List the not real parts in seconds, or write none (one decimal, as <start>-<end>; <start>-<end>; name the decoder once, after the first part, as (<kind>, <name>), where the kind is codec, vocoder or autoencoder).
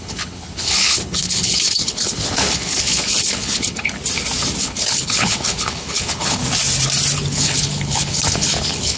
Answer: 0.0-4.0 (codec, HILCodec); 4.6-6.4; 7.3-9.0